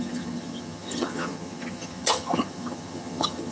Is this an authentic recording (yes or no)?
no